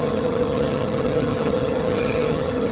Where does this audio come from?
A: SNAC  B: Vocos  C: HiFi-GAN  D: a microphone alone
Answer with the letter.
C